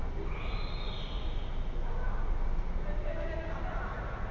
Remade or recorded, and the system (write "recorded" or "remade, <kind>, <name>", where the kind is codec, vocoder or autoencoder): recorded